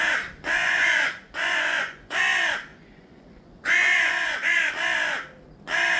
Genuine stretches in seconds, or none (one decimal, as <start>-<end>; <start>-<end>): 0.0-0.6; 2.2-2.7; 4.7-6.0

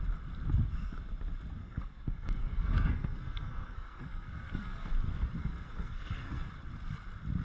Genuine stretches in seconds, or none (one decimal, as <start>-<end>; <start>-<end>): 0.0-1.6; 4.9-5.4; 6.5-7.4

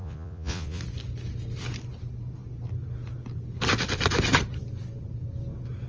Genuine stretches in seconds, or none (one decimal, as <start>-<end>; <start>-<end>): 0.8-5.9

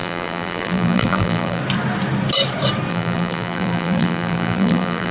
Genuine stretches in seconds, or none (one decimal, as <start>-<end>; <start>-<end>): 1.6-2.9

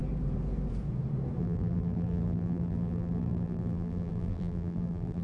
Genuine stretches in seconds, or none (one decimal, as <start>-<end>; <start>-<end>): 0.0-1.4